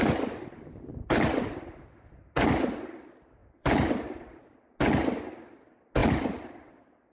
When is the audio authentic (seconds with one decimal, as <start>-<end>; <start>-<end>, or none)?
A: 0.0-3.4; 3.9-6.0; 6.6-7.1